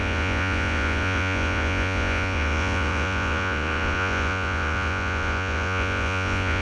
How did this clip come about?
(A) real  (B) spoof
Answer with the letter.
B